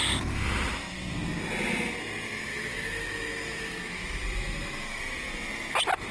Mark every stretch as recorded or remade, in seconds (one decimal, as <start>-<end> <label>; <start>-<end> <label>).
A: 0.0-2.5 recorded; 2.5-5.0 remade; 5.0-6.1 recorded